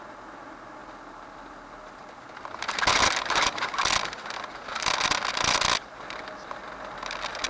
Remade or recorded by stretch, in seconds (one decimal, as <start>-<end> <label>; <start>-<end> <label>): 0.0-7.5 recorded